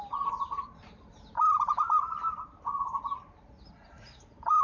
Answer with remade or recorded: recorded